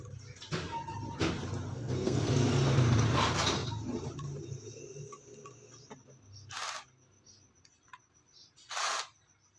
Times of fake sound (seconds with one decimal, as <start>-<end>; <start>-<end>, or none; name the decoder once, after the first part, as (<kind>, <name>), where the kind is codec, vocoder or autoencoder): 1.7-2.3 (codec, SNAC)